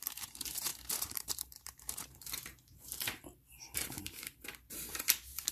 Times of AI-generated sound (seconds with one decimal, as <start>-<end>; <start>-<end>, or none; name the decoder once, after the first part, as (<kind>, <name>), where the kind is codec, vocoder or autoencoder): 0.0-5.5 (vocoder, BigVGAN v2)